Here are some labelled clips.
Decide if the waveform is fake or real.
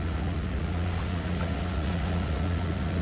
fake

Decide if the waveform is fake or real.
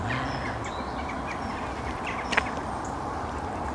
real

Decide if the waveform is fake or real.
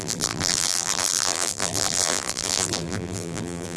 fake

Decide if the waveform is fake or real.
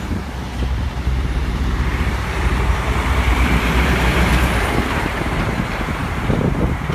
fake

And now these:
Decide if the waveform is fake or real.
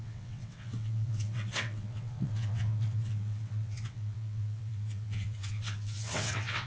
fake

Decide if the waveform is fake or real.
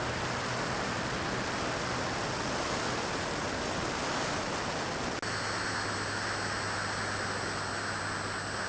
real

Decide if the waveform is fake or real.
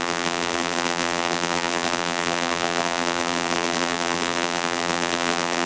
fake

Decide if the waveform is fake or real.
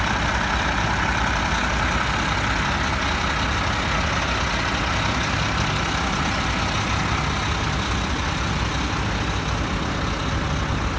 real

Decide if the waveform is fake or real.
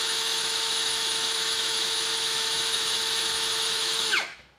fake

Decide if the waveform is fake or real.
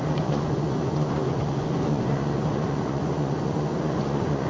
fake